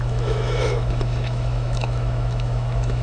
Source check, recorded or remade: remade